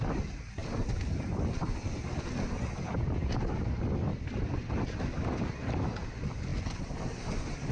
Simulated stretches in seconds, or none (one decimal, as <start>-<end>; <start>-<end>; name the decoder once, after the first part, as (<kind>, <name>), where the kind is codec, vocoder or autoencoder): none